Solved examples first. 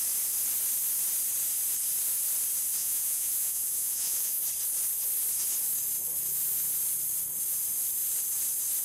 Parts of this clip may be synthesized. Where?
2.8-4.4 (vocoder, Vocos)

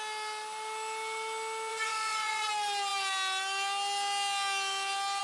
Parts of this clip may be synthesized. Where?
1.7-2.5 (vocoder, Vocos)

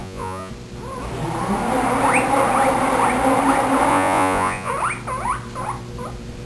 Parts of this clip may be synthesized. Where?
0.0-0.5 (vocoder, Vocos); 3.9-4.7

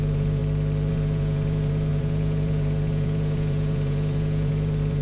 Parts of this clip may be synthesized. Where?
0.0-0.4 (vocoder, Vocos); 0.9-5.0

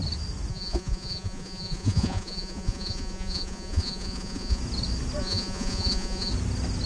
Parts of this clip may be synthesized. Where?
0.5-4.6 (vocoder, Vocos); 5.2-6.3

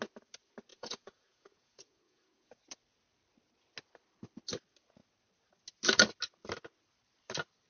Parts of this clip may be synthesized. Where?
0.7-2.6 (vocoder, Vocos)

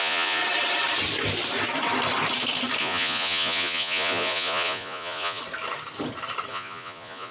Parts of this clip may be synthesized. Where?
0.0-0.4 (vocoder, Vocos); 2.8-5.4; 6.5-7.3

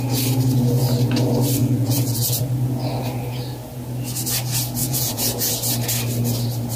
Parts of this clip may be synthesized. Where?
1.6-2.4 (vocoder, Vocos); 4.8-5.5